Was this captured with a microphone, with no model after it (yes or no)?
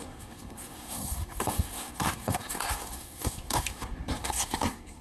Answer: no